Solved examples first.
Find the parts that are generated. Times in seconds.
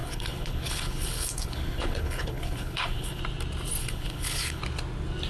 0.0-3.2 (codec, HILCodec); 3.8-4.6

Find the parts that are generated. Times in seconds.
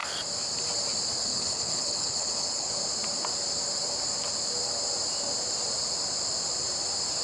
1.3-2.7 (codec, HILCodec)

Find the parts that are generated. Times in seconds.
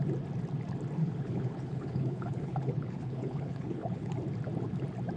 1.0-4.1 (codec, HILCodec)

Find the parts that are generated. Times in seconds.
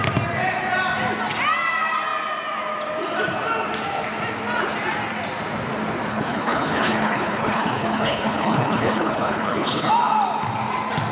6.1-9.9 (codec, HILCodec)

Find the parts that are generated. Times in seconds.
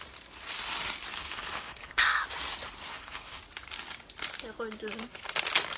1.1-2.0 (codec, HILCodec); 2.9-3.4